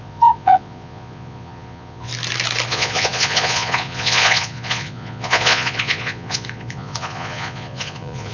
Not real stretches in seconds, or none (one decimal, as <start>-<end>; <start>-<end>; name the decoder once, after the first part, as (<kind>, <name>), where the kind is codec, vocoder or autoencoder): 0.0-2.1 (vocoder, Vocos); 2.7-8.3